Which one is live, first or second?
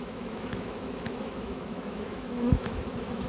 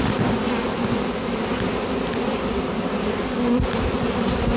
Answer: second